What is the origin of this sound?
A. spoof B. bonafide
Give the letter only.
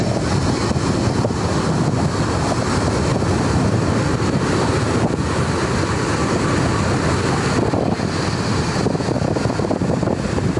B